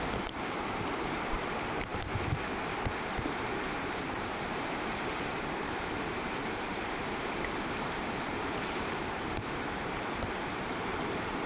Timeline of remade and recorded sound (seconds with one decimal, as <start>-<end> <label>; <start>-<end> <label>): 0.0-1.9 remade; 1.9-3.0 recorded; 3.0-11.5 remade